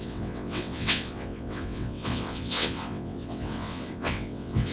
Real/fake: fake